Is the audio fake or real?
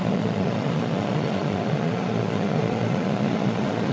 fake